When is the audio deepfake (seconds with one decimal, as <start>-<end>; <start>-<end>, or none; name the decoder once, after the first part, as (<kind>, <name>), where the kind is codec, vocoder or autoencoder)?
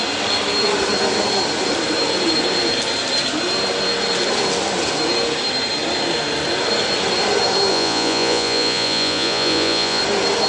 7.7-10.0 (vocoder, Vocos)